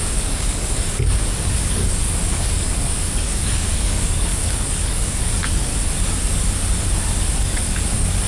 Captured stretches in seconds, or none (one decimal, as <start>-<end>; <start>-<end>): 5.7-7.4